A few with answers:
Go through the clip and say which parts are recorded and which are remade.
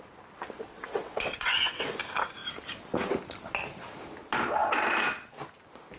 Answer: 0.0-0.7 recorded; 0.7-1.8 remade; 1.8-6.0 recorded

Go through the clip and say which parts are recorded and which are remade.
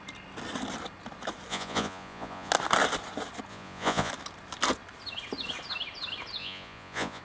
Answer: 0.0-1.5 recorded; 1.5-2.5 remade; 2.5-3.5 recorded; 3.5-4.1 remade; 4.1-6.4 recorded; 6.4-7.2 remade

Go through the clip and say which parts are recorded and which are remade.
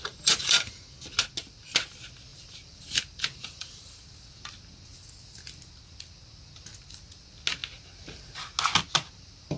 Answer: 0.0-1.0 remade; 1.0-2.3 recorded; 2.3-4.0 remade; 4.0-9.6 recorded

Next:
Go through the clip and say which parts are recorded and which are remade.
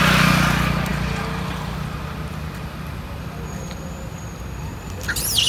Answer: 0.0-5.5 recorded